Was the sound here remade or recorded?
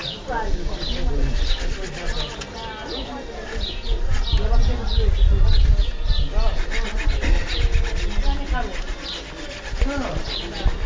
recorded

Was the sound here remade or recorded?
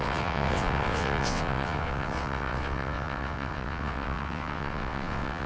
remade